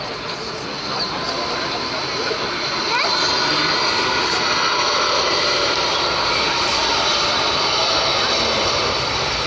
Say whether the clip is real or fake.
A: real